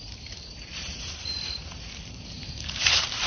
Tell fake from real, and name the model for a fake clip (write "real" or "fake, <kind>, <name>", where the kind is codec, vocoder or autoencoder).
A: fake, vocoder, BigVGAN v2